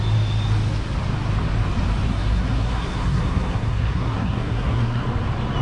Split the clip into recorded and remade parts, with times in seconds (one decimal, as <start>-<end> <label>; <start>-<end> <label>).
0.0-2.1 recorded; 2.1-5.0 remade; 5.0-5.6 recorded